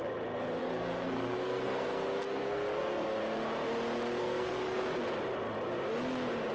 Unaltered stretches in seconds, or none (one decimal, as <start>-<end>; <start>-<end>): 0.0-0.6; 3.2-4.2; 4.8-6.5